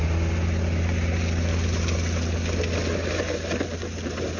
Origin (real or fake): real